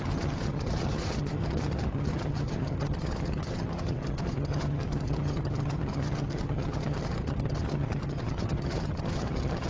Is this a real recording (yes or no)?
no